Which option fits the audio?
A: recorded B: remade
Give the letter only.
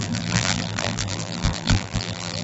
B